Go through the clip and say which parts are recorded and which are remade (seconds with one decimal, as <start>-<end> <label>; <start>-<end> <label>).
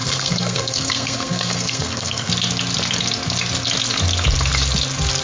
0.0-2.3 remade; 2.3-5.2 recorded